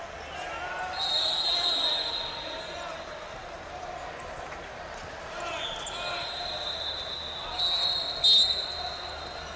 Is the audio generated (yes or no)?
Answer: no